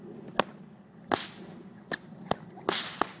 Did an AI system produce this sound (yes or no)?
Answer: no